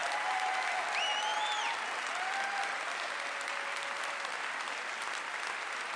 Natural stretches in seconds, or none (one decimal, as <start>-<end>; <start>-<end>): 0.8-6.0